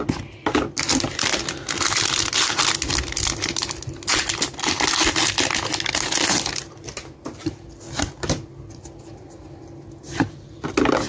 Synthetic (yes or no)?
no